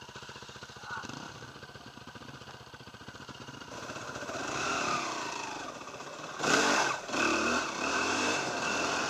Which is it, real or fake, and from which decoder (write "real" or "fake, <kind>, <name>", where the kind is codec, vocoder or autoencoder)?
fake, vocoder, BigVGAN v2